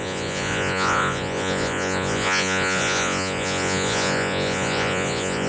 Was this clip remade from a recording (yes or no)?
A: yes